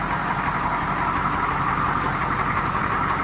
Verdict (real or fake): fake